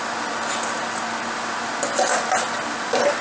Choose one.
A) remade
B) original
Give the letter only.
B